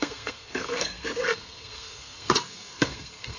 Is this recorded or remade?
remade